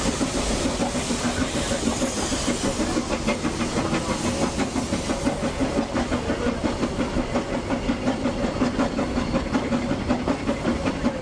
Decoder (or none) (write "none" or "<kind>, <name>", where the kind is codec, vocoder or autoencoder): none